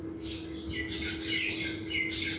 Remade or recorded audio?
recorded